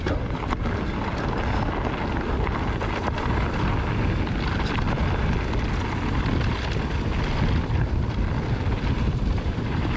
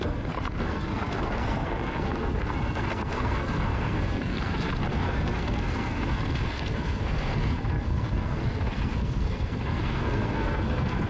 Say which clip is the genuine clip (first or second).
first